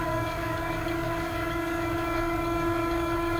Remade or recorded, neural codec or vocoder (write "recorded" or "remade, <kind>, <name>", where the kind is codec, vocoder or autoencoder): remade, codec, DAC